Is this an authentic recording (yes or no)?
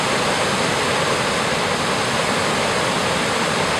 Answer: yes